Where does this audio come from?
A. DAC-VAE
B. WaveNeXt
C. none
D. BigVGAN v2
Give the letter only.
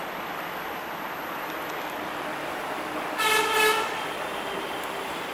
C